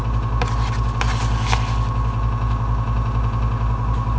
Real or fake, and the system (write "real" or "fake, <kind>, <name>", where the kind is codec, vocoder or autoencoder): real